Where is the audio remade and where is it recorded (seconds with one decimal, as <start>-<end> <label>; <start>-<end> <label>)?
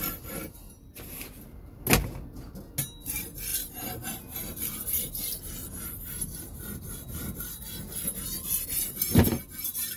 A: 0.0-10.0 recorded